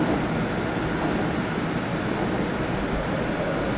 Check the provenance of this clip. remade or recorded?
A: recorded